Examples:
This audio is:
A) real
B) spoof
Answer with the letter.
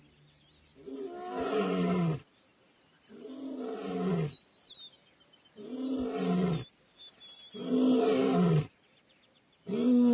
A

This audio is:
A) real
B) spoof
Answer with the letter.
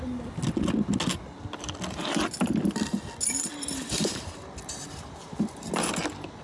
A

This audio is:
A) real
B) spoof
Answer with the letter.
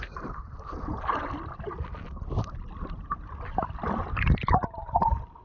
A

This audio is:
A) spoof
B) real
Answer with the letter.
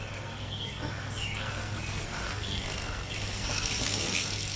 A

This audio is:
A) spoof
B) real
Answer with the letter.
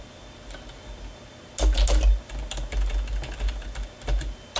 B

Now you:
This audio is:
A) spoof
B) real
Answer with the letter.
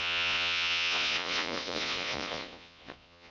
A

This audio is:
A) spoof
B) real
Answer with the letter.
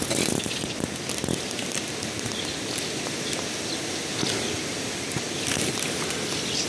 B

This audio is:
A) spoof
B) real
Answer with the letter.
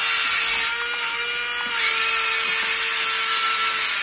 B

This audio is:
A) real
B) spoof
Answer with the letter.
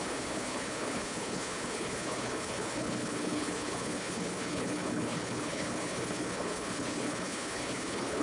B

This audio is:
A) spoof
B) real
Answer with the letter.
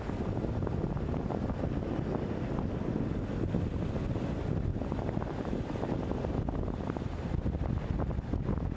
B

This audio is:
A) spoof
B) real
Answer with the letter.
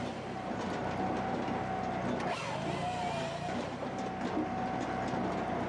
B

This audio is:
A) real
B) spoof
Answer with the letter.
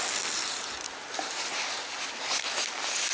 A